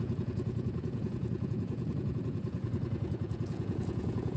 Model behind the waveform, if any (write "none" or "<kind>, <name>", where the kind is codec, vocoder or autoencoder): vocoder, Vocos